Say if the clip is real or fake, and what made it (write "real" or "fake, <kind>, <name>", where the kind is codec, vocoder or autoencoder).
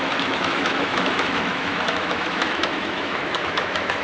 fake, autoencoder, DAC-VAE